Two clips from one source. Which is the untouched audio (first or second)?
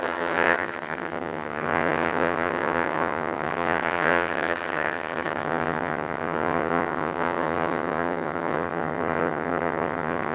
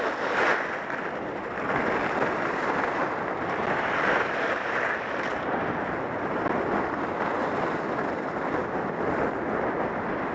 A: second